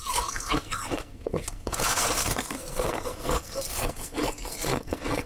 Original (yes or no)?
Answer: no